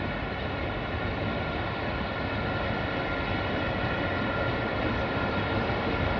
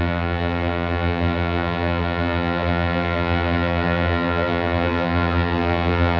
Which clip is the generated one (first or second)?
second